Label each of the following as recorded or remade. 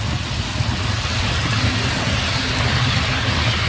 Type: recorded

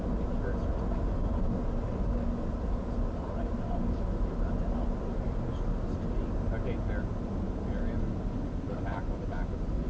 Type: recorded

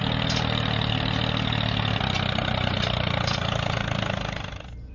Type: recorded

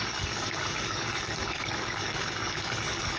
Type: remade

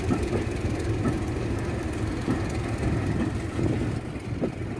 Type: remade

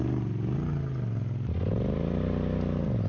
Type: recorded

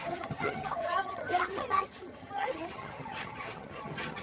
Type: remade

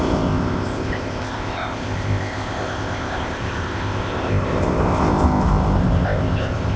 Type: remade